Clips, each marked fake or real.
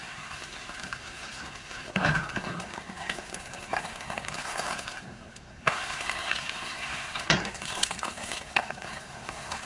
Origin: fake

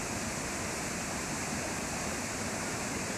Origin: real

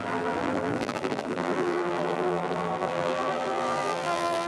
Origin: fake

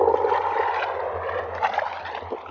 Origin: real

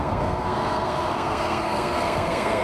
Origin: fake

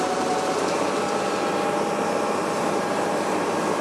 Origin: fake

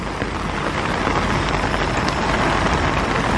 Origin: real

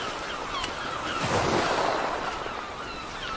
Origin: real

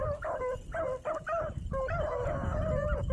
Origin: real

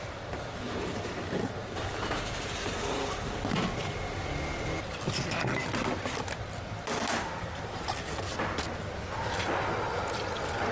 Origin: real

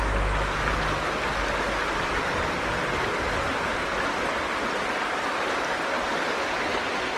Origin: real